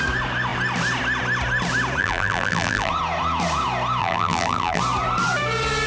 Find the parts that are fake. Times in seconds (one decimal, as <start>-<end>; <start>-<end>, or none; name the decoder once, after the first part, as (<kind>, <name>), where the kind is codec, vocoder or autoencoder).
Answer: 2.0-2.9 (vocoder, BigVGAN v2); 4.0-4.8